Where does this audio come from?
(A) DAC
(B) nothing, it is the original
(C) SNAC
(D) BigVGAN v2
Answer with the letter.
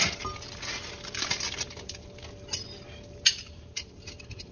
B